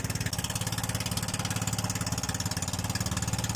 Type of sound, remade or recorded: recorded